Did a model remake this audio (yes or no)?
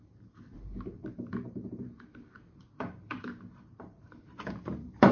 yes